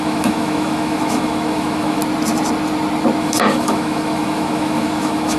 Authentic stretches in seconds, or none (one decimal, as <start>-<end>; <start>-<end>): 2.0-3.2